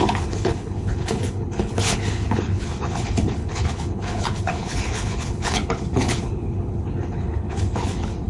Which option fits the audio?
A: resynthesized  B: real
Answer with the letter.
A